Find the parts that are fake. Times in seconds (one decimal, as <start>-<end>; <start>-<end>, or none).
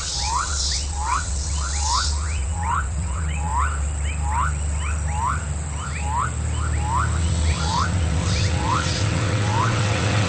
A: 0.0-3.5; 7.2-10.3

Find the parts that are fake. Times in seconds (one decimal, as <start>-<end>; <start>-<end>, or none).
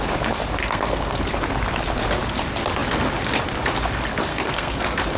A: 0.6-1.2; 4.3-4.8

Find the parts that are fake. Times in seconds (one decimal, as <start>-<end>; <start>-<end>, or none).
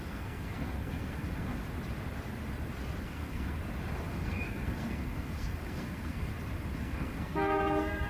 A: 0.0-1.6; 3.0-3.6; 4.1-6.3; 6.8-8.1